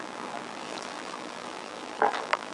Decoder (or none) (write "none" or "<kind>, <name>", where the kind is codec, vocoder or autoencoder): vocoder, BigVGAN v2